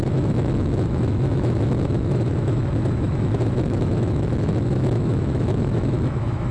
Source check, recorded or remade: remade